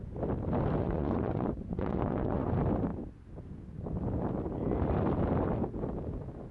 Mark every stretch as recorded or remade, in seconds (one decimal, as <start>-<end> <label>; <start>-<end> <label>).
0.0-0.8 recorded; 0.8-2.5 remade; 2.5-6.5 recorded